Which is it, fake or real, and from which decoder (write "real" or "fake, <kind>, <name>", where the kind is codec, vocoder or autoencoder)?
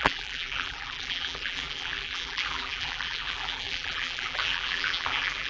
fake, vocoder, BigVGAN v2